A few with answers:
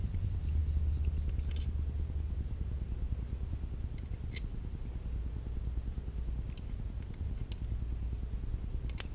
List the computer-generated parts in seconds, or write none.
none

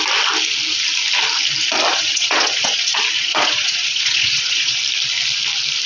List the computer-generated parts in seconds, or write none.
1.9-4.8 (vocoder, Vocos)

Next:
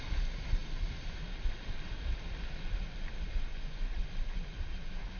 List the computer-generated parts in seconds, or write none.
3.5-4.0 (vocoder, Vocos)